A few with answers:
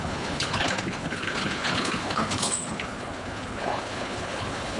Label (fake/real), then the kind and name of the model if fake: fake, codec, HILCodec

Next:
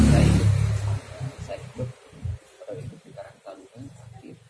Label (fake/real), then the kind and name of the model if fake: real